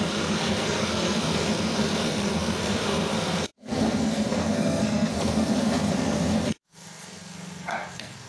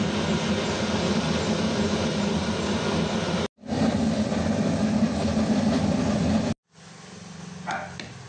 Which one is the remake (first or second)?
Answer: first